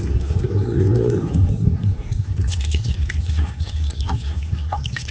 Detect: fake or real fake